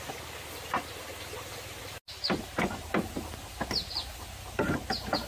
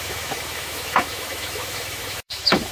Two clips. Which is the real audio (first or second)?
first